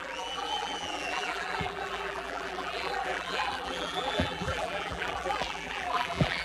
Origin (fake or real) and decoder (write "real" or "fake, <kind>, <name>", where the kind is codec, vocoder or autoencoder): fake, vocoder, BigVGAN v2